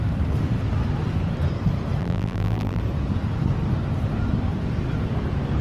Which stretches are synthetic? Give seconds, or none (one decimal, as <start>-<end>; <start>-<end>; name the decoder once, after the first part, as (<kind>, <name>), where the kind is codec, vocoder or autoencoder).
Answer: 2.0-2.8 (vocoder, BigVGAN v2)

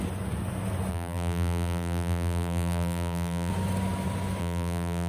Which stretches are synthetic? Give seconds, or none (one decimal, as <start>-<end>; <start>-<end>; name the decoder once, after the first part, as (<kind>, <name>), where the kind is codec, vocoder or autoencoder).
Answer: 0.9-3.5 (vocoder, BigVGAN v2); 4.4-5.1